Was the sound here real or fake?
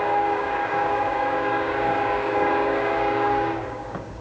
fake